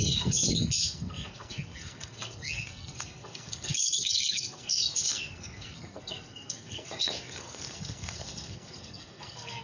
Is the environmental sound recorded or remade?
remade